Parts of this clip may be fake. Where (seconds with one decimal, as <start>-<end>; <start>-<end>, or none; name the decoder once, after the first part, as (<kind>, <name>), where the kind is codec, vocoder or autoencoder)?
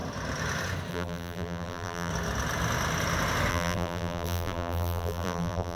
0.9-2.1 (vocoder, BigVGAN v2); 3.5-5.8